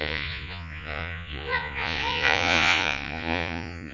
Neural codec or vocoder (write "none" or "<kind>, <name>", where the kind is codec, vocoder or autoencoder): vocoder, Vocos